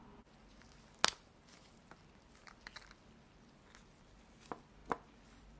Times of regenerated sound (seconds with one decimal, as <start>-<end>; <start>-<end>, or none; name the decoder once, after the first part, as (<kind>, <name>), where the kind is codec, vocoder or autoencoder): none